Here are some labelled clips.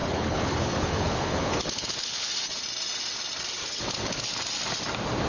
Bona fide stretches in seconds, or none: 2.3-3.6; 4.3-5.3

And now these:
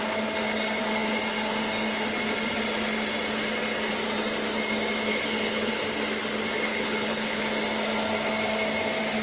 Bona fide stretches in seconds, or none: 0.0-5.1; 5.7-6.7; 7.4-9.2

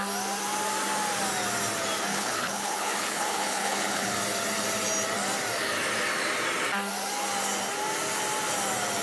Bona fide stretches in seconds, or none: 0.0-2.1; 4.1-9.0

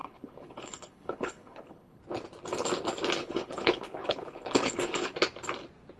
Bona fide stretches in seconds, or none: 2.0-3.2; 5.1-6.0

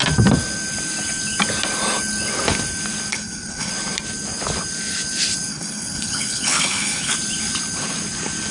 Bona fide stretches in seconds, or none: 0.0-3.1; 3.7-5.5; 7.1-8.5

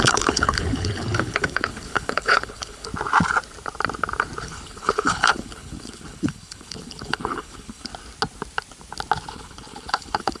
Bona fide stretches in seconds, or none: 2.9-4.4; 7.9-9.3

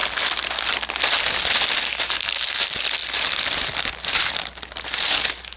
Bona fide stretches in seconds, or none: 0.0-5.6